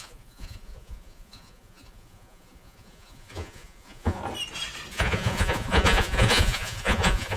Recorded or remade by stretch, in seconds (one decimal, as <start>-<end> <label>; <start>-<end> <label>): 0.0-4.2 remade; 4.2-4.9 recorded; 4.9-7.4 remade